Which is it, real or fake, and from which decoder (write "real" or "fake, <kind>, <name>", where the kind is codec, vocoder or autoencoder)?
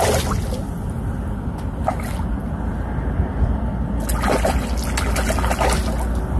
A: real